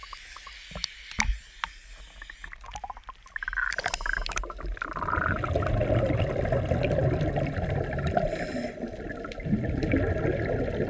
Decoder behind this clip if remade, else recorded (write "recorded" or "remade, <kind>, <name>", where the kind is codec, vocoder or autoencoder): recorded